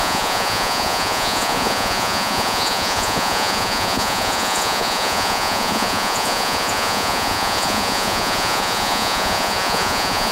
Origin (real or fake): fake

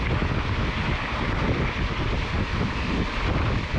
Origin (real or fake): real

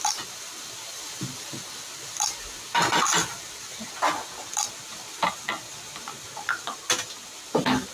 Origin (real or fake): real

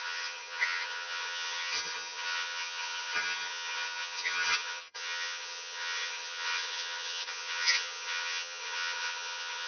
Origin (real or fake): fake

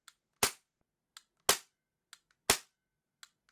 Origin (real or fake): real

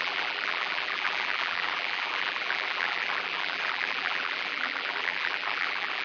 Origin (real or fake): fake